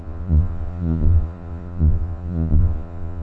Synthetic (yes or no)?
yes